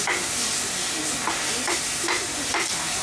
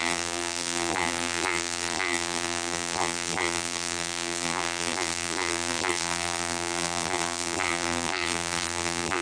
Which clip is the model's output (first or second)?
second